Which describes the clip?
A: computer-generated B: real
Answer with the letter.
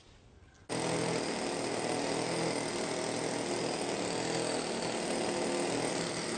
B